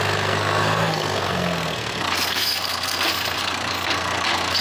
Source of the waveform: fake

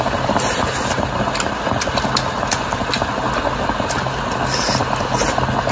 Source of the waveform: real